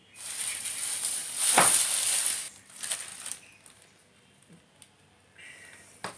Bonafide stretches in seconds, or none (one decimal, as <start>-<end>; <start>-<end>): 0.0-6.2